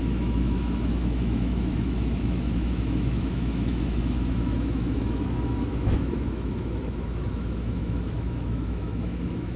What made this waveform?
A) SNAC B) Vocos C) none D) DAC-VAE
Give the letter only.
D